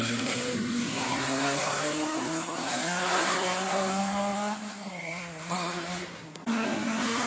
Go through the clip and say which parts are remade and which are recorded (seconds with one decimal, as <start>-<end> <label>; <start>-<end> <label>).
0.0-7.3 remade